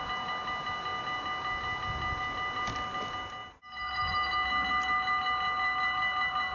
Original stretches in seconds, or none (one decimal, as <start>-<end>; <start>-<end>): 0.0-6.5